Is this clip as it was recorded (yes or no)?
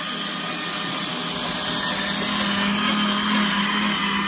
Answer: yes